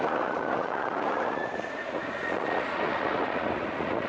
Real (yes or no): no